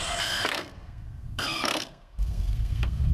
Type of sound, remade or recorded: remade